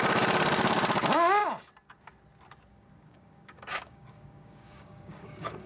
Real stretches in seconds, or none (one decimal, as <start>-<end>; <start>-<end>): 0.0-2.7